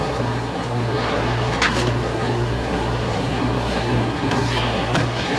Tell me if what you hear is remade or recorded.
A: remade